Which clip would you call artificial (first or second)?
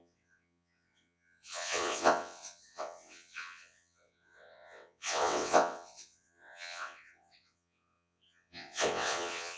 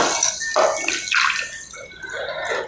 first